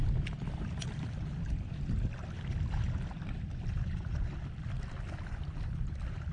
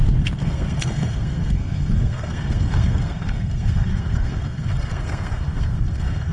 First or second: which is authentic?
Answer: first